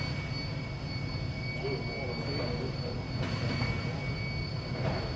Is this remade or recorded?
recorded